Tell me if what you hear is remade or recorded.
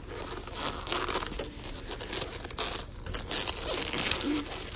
recorded